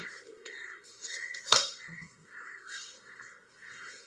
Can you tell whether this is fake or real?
fake